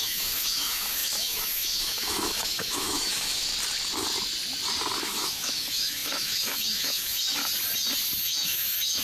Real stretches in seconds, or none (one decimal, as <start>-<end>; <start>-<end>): 3.5-5.0; 7.4-8.2